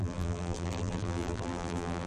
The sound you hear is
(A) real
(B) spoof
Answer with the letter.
B